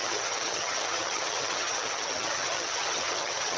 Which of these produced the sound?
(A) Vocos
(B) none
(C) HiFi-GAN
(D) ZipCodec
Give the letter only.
C